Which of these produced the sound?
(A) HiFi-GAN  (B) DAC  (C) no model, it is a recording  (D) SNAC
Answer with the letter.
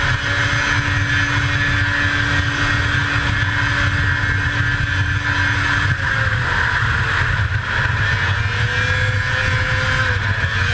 C